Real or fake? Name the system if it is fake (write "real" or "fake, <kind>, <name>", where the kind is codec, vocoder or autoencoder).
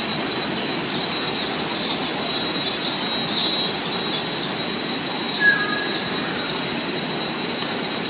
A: real